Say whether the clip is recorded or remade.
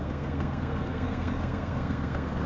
remade